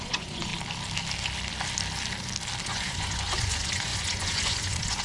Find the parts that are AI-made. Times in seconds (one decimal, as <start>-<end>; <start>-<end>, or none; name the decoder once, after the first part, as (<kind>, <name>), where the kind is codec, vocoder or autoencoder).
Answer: 0.0-0.5 (vocoder, Vocos); 2.6-5.0